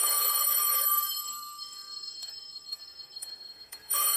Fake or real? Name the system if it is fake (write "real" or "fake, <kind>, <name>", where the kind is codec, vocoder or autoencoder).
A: fake, codec, SNAC